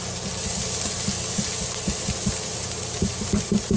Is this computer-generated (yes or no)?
no